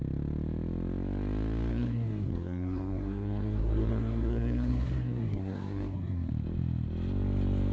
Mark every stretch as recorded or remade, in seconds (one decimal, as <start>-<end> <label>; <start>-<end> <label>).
0.0-1.7 recorded; 1.7-6.3 remade; 6.3-7.7 recorded